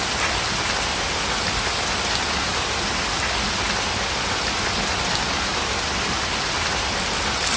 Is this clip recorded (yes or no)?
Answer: yes